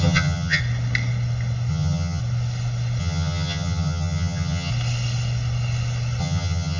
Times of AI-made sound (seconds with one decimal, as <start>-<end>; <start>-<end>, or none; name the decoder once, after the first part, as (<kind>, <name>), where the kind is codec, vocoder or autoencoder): 0.0-0.6 (vocoder, HiFi-GAN); 1.7-2.2; 3.0-4.7; 6.2-6.8

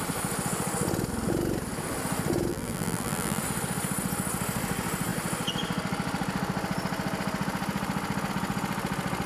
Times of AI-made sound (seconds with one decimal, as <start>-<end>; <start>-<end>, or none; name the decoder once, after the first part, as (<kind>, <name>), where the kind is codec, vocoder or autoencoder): 2.5-3.4 (vocoder, BigVGAN v2)